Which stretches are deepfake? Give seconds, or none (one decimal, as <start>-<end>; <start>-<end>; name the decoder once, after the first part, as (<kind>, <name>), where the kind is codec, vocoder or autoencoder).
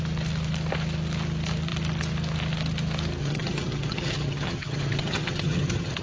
3.2-6.0 (vocoder, HiFi-GAN)